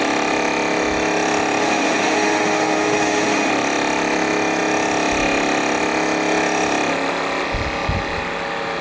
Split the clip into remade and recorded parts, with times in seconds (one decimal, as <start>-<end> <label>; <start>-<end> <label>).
0.0-1.6 recorded; 1.6-3.5 remade; 3.5-8.8 recorded

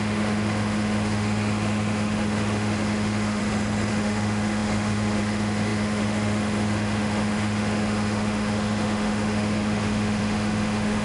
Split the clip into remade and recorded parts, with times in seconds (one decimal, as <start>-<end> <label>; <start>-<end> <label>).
0.0-3.4 remade; 3.4-3.9 recorded; 3.9-11.0 remade

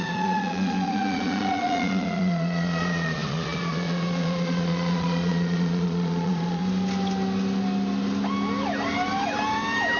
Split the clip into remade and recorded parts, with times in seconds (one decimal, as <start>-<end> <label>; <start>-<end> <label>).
0.0-6.6 remade; 6.6-10.0 recorded

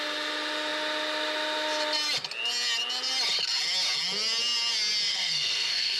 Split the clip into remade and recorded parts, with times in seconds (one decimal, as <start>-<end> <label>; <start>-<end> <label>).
0.0-5.1 recorded; 5.1-6.0 remade